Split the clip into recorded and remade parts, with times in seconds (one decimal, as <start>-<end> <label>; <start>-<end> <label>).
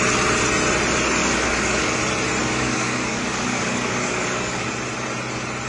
0.0-1.2 recorded; 1.2-2.0 remade; 2.0-2.4 recorded; 2.4-4.7 remade; 4.7-5.7 recorded